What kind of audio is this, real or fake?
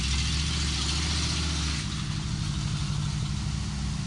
real